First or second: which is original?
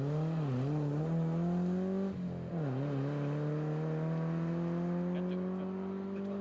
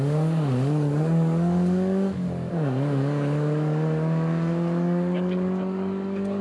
first